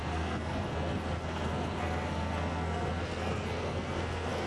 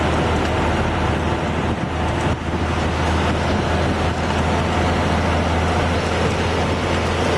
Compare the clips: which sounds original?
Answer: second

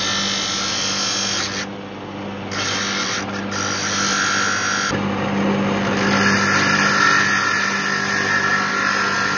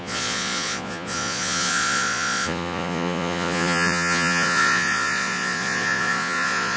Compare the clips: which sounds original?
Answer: first